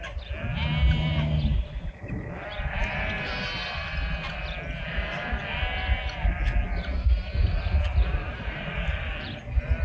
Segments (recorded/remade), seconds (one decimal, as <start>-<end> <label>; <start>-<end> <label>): 0.0-8.2 recorded; 8.2-8.7 remade; 8.7-9.8 recorded